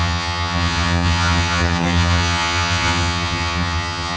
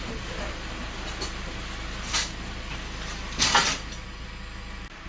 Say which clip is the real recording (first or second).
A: second